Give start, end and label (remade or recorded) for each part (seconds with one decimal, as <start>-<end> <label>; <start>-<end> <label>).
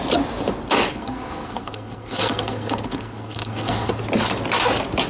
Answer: 0.0-0.9 recorded; 0.9-4.0 remade; 4.0-5.1 recorded